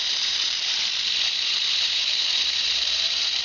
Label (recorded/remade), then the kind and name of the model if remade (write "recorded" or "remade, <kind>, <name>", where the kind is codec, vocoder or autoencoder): remade, vocoder, BigVGAN v2